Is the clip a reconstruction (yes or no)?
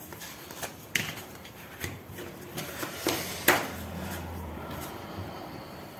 yes